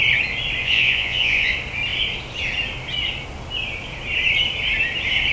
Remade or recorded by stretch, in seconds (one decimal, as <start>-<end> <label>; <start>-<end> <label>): 0.0-0.6 recorded; 0.6-1.5 remade; 1.5-5.3 recorded